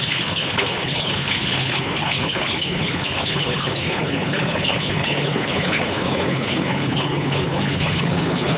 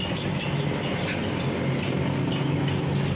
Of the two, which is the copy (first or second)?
first